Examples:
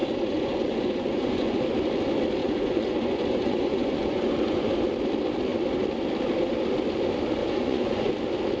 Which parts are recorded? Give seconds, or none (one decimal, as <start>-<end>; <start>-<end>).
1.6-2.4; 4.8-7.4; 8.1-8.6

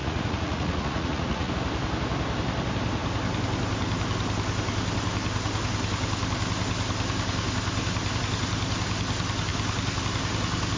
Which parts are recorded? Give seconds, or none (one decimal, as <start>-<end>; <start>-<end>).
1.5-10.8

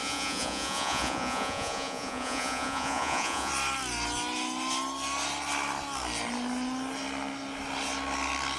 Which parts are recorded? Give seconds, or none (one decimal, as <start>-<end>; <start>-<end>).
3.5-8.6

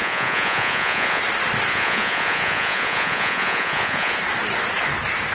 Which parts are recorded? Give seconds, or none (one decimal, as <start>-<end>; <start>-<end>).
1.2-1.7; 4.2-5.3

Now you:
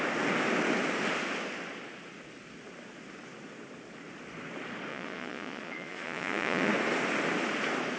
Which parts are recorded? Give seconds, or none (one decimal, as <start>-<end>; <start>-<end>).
0.0-4.9; 6.7-8.0